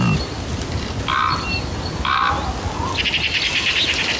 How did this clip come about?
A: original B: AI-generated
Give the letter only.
A